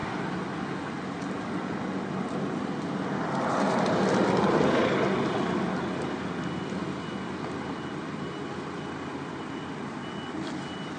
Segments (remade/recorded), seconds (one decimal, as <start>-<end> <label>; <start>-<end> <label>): 0.0-11.0 recorded